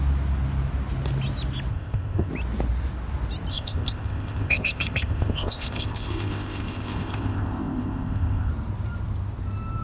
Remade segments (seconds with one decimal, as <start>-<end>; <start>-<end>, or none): 1.7-2.3; 3.5-8.5